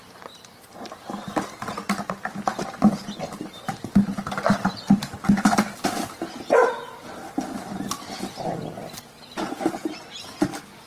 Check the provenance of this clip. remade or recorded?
recorded